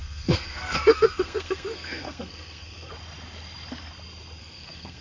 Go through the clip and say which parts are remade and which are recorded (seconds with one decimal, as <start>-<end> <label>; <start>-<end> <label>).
0.0-2.9 remade; 2.9-4.4 recorded; 4.4-5.0 remade